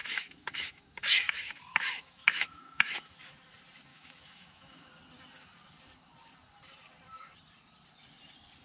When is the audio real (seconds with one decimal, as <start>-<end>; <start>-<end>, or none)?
3.2-3.9; 4.9-8.6